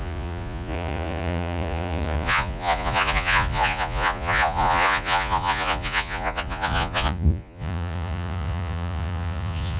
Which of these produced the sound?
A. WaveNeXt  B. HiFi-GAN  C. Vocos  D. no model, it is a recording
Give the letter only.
C